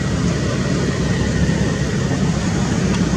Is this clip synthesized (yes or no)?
no